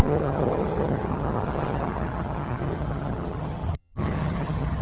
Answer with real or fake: fake